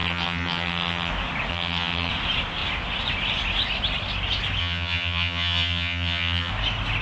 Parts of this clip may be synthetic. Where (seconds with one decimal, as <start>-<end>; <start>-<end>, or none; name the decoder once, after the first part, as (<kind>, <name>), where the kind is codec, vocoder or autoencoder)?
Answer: 0.0-1.1 (vocoder, HiFi-GAN); 1.5-2.1; 4.6-6.5